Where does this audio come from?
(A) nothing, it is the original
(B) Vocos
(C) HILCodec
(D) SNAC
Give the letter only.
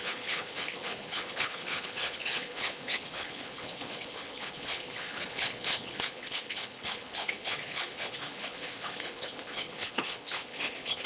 C